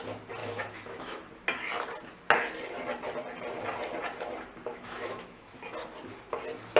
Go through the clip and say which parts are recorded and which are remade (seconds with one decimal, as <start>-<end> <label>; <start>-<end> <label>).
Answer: 0.0-0.4 recorded; 0.4-1.3 remade; 1.3-4.7 recorded; 4.7-5.5 remade; 5.5-6.8 recorded